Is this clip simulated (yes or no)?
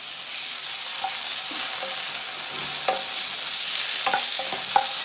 no